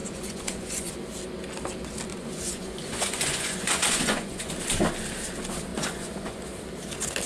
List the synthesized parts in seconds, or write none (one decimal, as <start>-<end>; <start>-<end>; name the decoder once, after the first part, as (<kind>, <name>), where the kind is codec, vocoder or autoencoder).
0.0-0.9 (vocoder, Vocos); 2.1-4.5; 5.7-6.4